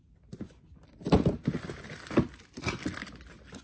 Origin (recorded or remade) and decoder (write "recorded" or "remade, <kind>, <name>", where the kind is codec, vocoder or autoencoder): recorded